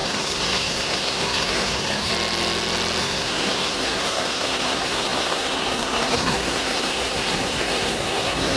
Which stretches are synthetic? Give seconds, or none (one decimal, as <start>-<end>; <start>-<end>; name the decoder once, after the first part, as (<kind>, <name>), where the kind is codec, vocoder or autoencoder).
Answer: 0.0-2.1 (codec, SNAC); 3.0-8.6